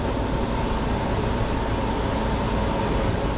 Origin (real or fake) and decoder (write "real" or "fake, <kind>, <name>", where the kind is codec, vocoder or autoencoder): real